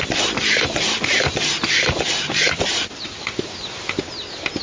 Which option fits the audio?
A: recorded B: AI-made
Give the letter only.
A